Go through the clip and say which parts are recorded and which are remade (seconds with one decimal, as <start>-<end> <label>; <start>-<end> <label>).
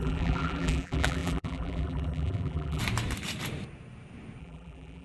0.0-2.8 remade; 2.8-4.4 recorded; 4.4-5.0 remade